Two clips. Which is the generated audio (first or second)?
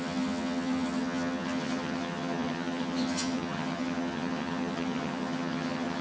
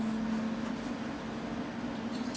first